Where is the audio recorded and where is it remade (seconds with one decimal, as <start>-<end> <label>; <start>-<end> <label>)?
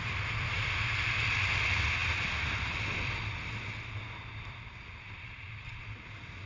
0.0-6.5 recorded